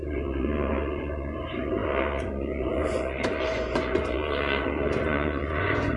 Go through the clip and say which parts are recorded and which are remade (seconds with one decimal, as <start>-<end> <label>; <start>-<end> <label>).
0.0-6.0 remade